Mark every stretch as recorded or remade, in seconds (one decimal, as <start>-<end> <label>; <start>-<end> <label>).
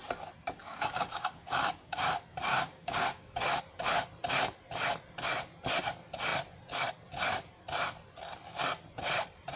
0.0-0.6 recorded; 0.6-2.1 remade; 2.1-2.5 recorded; 2.5-3.6 remade; 3.6-9.6 recorded